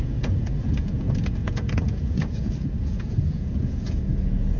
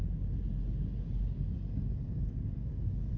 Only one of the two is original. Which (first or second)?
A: second